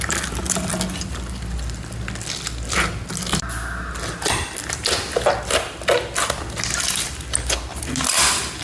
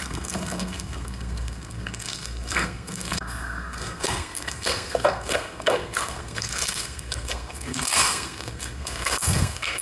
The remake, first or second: second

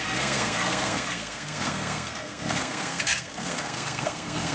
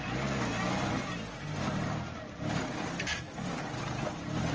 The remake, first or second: first